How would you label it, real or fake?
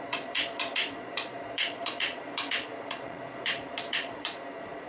fake